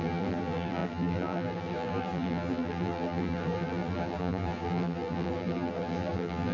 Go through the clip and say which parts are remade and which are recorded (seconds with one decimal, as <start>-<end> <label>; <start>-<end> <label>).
0.0-6.5 remade